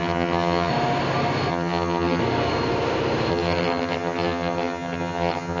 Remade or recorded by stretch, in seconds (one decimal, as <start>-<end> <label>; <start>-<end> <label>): 0.0-0.7 remade; 0.7-1.5 recorded; 1.5-2.2 remade; 2.2-3.3 recorded; 3.3-5.6 remade